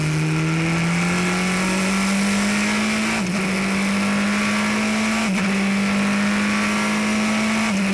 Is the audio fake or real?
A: real